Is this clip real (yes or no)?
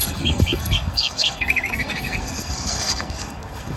no